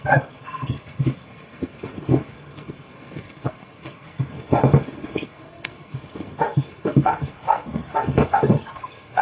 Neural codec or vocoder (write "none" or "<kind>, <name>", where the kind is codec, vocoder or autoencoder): codec, SNAC